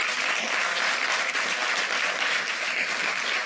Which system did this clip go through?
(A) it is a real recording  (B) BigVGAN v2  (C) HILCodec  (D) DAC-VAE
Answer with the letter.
B